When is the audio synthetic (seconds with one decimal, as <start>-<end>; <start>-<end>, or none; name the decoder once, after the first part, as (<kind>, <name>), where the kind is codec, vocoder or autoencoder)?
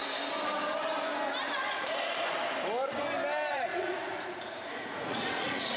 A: 3.5-5.8 (vocoder, Vocos)